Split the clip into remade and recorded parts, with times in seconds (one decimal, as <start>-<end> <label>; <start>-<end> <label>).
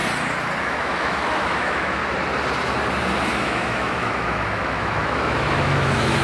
0.0-0.6 recorded; 0.6-2.0 remade; 2.0-3.2 recorded; 3.2-6.2 remade